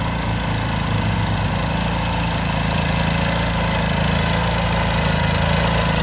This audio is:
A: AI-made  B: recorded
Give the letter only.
B